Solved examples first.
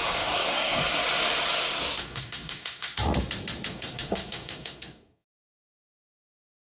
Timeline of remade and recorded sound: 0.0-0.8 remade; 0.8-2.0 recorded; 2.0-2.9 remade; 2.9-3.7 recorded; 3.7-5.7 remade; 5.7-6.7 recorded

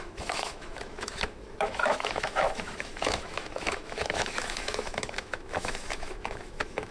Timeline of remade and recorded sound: 0.0-6.9 remade

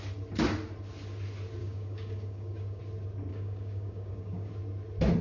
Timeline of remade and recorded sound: 0.0-1.6 recorded; 1.6-2.8 remade; 2.8-3.3 recorded; 3.3-4.5 remade; 4.5-5.2 recorded

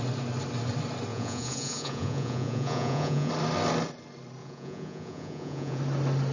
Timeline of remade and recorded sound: 0.0-1.1 recorded; 1.1-3.3 remade; 3.3-4.4 recorded; 4.4-5.8 remade; 5.8-6.3 recorded

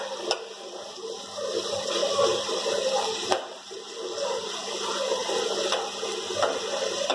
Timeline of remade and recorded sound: 0.0-2.0 recorded; 2.0-4.7 remade; 4.7-7.1 recorded